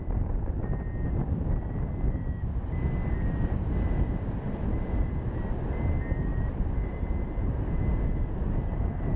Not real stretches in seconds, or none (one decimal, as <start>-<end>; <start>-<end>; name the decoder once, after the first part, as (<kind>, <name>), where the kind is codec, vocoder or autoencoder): none

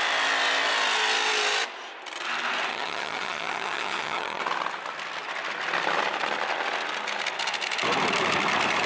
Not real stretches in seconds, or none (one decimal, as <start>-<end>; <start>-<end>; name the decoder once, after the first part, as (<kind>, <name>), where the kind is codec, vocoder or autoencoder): 2.7-4.4 (vocoder, HiFi-GAN)